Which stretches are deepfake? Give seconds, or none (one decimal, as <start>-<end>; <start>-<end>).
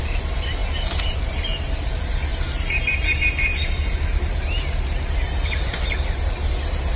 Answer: 0.6-1.6; 2.3-6.5